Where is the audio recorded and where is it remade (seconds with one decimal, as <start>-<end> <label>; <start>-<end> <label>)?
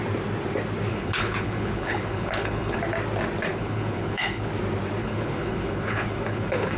0.0-0.9 recorded; 0.9-2.8 remade; 2.8-3.5 recorded; 3.5-4.5 remade; 4.5-5.0 recorded; 5.0-6.8 remade